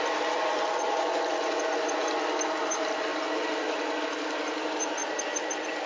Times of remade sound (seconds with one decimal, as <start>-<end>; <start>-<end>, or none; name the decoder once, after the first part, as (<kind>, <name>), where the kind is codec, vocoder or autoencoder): none